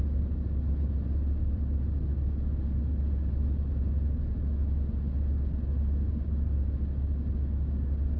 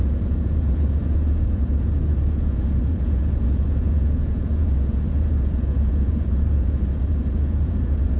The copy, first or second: second